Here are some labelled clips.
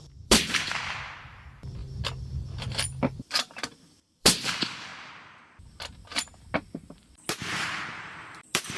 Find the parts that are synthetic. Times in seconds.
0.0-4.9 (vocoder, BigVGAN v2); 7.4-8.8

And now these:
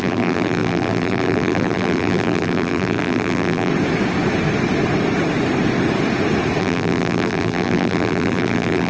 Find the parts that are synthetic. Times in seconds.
0.0-3.7 (vocoder, BigVGAN v2); 6.6-8.9

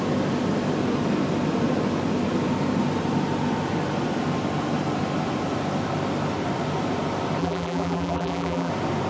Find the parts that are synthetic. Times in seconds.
7.4-8.7 (vocoder, BigVGAN v2)

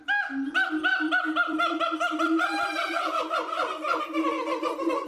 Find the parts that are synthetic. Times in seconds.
0.9-4.0 (vocoder, BigVGAN v2)

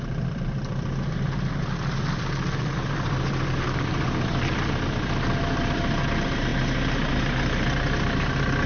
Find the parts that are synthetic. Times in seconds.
0.0-6.5 (vocoder, BigVGAN v2); 7.1-8.7

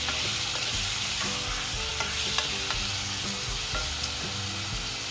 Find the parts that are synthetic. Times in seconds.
none

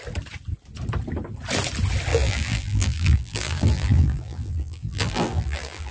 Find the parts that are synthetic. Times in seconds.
2.1-5.9 (vocoder, BigVGAN v2)

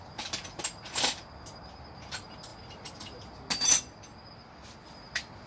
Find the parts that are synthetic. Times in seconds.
none